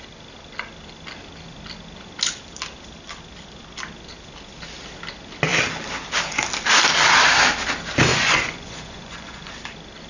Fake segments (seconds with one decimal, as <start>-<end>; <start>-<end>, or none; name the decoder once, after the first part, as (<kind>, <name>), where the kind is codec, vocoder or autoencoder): 8.1-9.5 (vocoder, Vocos)